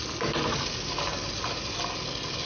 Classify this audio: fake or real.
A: real